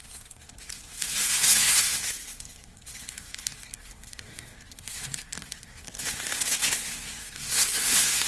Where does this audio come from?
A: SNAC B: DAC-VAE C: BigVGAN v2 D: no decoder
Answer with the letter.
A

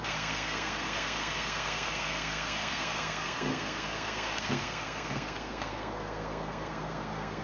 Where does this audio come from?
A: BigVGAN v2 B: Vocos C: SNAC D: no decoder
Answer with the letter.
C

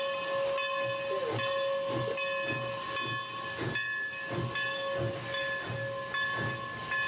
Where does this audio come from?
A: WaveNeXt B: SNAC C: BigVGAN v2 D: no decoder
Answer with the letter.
D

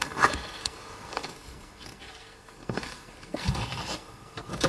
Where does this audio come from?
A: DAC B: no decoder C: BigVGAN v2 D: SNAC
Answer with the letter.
D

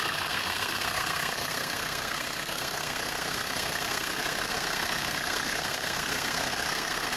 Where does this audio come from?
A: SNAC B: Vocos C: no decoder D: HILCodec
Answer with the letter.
A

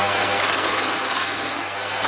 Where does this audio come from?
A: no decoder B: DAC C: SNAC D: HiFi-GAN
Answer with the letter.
C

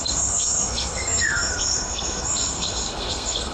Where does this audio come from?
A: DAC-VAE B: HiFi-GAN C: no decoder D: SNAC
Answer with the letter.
D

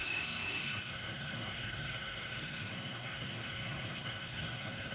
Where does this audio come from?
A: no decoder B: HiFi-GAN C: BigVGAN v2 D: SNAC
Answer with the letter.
D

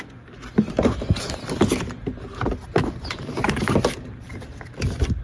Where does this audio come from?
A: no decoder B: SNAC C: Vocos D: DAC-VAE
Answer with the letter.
A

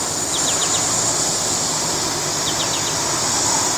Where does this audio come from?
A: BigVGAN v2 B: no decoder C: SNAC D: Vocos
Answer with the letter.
B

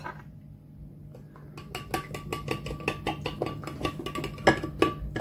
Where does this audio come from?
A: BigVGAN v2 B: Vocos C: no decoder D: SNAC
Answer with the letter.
C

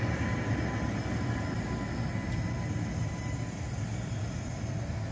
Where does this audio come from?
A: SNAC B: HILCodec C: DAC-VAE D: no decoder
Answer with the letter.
D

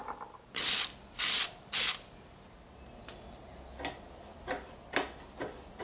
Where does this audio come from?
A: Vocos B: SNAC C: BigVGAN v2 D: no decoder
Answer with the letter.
D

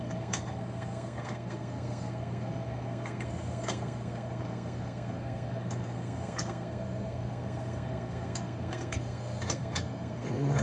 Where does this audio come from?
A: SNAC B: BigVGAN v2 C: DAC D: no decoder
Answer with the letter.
A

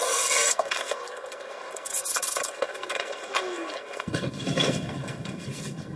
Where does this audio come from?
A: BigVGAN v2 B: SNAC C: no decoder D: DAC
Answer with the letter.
B